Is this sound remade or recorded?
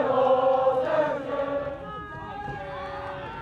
recorded